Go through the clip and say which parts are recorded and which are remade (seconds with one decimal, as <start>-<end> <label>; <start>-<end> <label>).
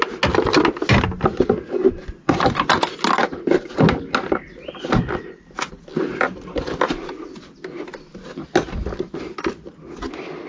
0.0-10.5 recorded